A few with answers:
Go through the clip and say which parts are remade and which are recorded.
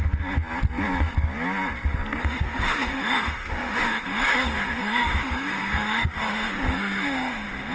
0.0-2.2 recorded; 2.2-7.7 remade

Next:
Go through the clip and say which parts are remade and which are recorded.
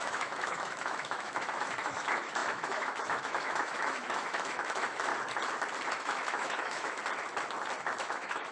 0.0-5.1 remade; 5.1-5.9 recorded; 5.9-7.0 remade; 7.0-8.0 recorded; 8.0-8.5 remade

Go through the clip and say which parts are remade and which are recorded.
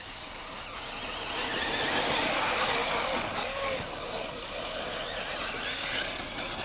0.0-6.6 recorded